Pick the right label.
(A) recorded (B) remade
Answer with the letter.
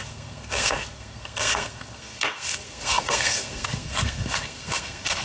B